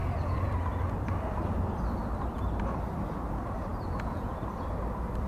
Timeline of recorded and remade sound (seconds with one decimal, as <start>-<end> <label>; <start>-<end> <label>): 0.0-3.7 recorded; 3.7-4.4 remade; 4.4-5.3 recorded